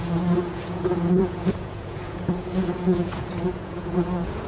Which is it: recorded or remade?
remade